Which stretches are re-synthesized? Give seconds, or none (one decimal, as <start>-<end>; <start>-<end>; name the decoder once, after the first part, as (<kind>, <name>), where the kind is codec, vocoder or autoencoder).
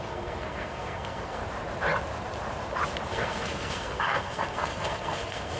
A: 0.0-1.4 (codec, SNAC); 3.1-5.6